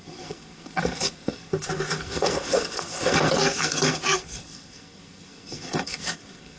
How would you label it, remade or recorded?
remade